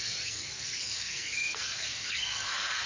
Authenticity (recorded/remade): remade